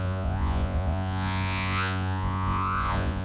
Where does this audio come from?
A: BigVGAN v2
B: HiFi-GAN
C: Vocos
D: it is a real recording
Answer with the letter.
C